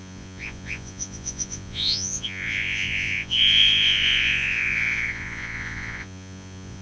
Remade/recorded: remade